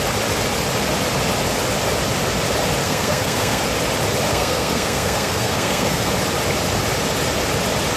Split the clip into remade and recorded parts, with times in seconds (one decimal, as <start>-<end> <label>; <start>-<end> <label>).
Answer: 0.0-2.8 recorded; 2.8-3.6 remade; 3.6-4.3 recorded; 4.3-6.1 remade; 6.1-8.0 recorded